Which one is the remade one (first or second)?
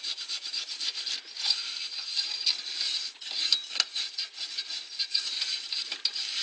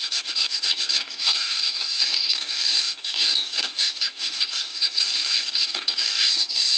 second